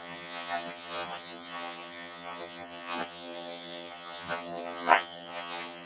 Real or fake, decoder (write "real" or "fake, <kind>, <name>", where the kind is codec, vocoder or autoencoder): fake, vocoder, HiFi-GAN